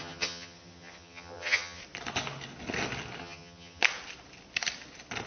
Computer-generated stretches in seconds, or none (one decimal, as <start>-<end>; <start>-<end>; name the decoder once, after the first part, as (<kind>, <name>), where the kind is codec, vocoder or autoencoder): 0.0-1.8 (vocoder, HiFi-GAN); 3.2-3.8